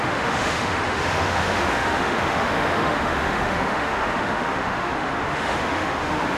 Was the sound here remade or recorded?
remade